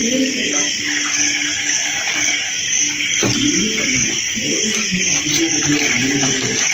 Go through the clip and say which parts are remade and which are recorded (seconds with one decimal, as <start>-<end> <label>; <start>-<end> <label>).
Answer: 0.0-6.7 remade